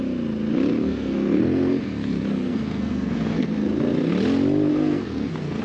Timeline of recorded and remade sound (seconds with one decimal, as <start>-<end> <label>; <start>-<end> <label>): 0.0-0.7 recorded; 0.7-4.1 remade; 4.1-4.7 recorded; 4.7-5.6 remade